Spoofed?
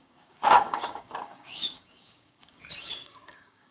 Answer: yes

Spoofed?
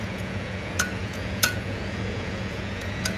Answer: yes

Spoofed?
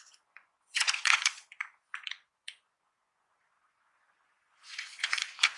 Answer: yes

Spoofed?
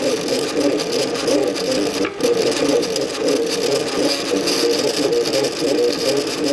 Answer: no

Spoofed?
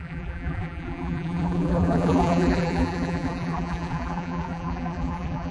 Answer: yes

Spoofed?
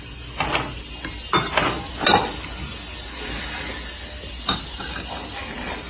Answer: no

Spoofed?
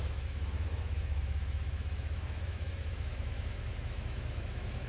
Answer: yes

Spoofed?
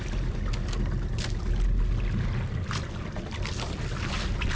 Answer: no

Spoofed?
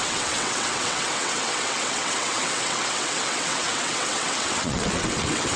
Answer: yes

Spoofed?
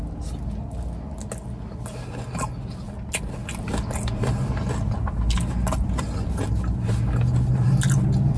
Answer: no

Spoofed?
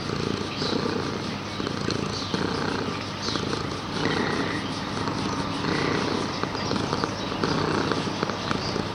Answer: no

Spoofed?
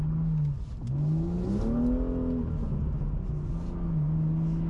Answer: no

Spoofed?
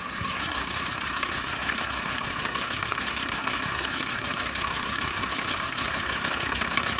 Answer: yes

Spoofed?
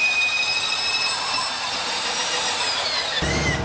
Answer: no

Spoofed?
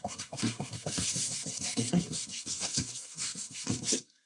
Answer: yes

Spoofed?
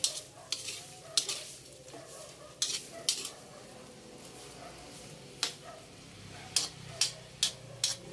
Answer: no